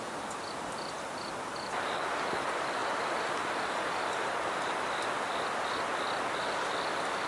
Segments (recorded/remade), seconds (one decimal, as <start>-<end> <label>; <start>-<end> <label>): 0.0-7.3 recorded

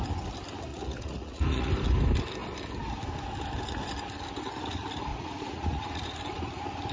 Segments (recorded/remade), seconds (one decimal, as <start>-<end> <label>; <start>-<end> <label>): 0.0-0.7 recorded; 0.7-1.7 remade; 1.7-5.1 recorded; 5.1-6.2 remade; 6.2-6.9 recorded

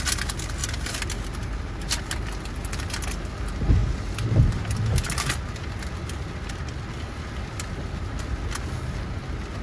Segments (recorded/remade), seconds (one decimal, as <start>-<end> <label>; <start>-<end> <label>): 0.0-9.6 recorded

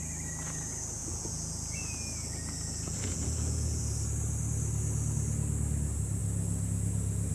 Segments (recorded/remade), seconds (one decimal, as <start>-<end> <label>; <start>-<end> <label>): 0.0-1.0 recorded; 1.0-3.8 remade; 3.8-7.3 recorded